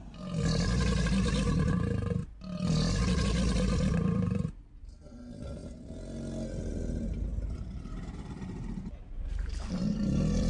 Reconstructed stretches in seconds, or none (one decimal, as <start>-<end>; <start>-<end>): 2.2-4.8; 7.3-8.0